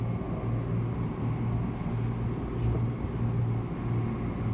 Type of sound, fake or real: real